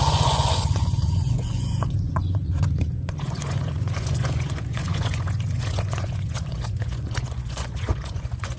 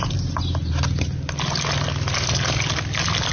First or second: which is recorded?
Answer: second